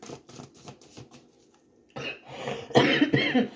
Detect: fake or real real